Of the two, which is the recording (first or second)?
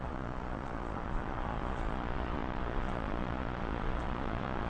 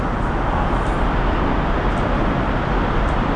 second